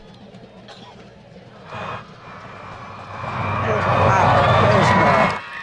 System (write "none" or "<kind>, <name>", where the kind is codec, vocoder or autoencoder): none